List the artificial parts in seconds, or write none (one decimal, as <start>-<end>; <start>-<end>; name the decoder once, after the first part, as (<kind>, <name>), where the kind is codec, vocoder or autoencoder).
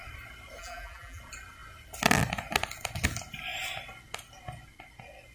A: 0.6-1.2 (vocoder, BigVGAN v2)